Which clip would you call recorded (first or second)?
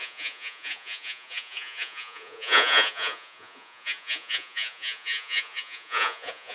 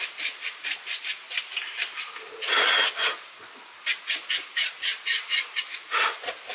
second